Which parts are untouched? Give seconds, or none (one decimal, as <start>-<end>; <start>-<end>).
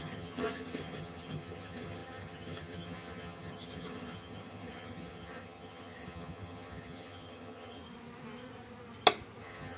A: 7.8-9.4